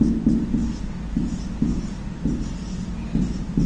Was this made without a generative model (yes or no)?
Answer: yes